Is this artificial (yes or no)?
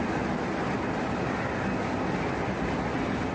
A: no